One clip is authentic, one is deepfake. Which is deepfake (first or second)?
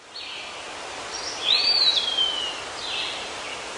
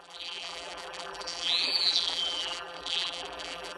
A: second